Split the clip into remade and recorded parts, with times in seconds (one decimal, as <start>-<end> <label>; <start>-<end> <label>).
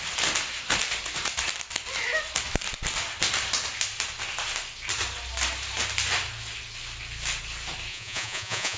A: 0.0-7.9 recorded; 7.9-8.8 remade